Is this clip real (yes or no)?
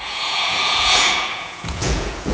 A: no